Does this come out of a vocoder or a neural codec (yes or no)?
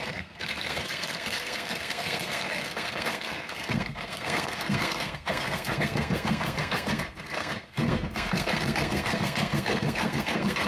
yes